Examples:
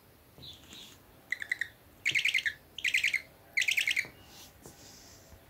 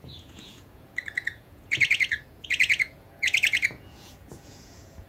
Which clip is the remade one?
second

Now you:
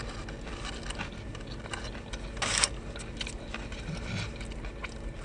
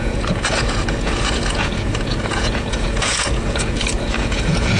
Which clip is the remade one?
second